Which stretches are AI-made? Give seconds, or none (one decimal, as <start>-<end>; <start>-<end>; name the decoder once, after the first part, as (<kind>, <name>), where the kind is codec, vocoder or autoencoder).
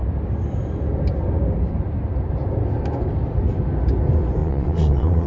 4.4-5.3 (vocoder, Vocos)